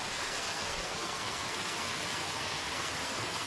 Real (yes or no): no